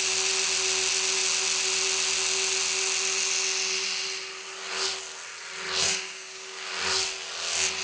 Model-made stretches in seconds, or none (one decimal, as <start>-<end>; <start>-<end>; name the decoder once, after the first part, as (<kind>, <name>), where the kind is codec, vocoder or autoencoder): 5.8-6.7 (codec, DAC)